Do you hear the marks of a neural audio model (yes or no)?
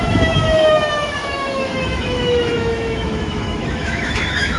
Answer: yes